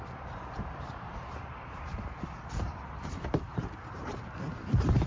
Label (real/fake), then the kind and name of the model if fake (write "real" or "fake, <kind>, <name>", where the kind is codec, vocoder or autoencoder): fake, vocoder, BigVGAN v2